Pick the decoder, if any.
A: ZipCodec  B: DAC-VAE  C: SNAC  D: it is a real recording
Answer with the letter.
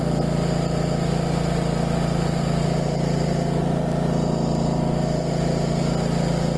D